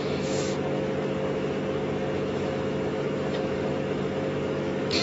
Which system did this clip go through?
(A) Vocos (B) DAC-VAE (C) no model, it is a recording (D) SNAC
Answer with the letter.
B